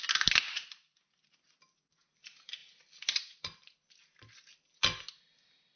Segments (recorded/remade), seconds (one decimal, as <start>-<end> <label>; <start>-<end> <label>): 0.0-5.8 recorded